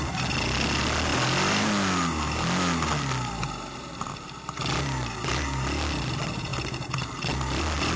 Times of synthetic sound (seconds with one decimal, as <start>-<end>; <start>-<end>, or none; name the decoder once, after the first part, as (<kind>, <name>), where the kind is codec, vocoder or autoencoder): none